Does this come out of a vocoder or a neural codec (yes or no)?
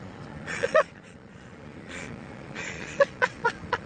yes